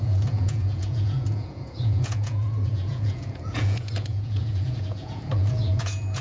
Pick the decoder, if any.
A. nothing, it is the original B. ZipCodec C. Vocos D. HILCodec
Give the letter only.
C